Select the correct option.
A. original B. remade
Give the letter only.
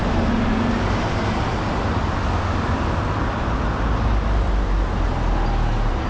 A